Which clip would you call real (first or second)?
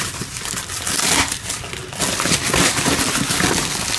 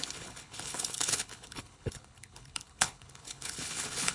first